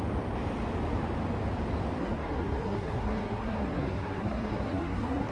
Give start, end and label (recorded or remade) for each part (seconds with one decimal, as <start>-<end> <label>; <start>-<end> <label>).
0.0-2.0 recorded; 2.0-5.3 remade